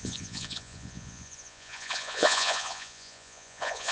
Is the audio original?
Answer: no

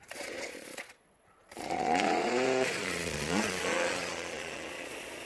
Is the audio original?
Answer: no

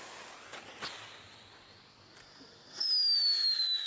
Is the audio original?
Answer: yes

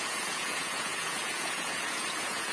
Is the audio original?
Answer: no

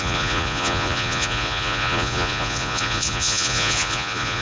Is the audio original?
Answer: no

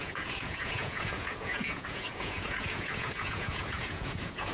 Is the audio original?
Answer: no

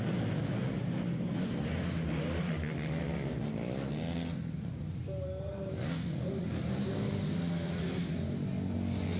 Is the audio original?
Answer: yes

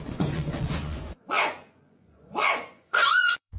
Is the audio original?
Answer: no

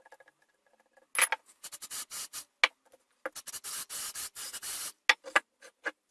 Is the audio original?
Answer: yes